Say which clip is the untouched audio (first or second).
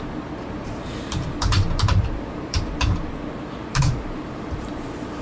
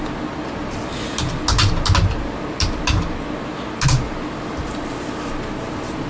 second